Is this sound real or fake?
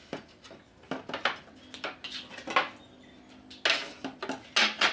real